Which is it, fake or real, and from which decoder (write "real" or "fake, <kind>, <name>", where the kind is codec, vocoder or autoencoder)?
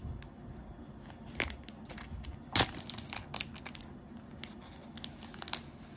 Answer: real